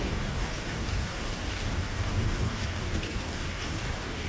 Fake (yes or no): yes